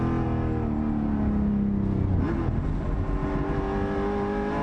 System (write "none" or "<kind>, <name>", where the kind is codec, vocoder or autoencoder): none